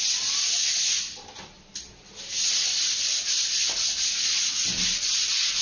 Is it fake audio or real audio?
real